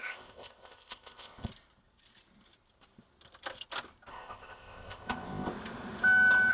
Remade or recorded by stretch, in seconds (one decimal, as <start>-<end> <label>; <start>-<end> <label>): 0.0-1.5 remade; 1.5-4.1 recorded; 4.1-5.5 remade; 5.5-6.5 recorded